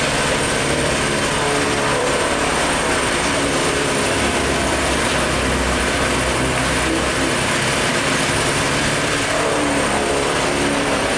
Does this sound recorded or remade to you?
remade